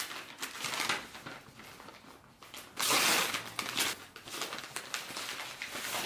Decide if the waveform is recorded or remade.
recorded